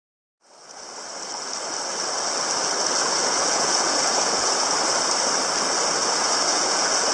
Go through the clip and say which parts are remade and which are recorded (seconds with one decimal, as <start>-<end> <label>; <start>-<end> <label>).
0.0-3.0 recorded; 3.0-4.8 remade; 4.8-6.0 recorded; 6.0-7.1 remade